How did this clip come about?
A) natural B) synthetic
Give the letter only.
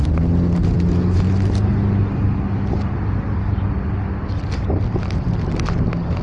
A